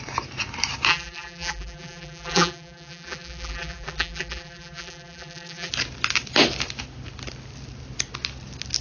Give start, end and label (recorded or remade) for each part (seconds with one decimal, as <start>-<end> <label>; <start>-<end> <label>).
0.0-0.9 recorded; 0.9-5.7 remade; 5.7-8.8 recorded